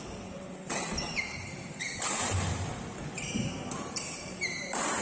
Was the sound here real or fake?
fake